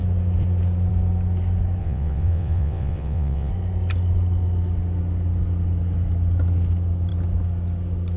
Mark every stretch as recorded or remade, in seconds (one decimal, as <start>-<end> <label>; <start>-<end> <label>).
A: 0.0-1.8 recorded; 1.8-3.5 remade; 3.5-8.2 recorded